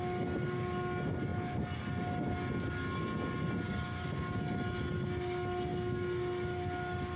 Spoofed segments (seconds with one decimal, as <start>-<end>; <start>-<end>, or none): none